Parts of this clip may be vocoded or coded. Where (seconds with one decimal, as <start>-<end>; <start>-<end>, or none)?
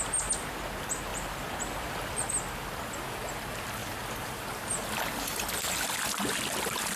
1.1-2.3; 3.8-4.6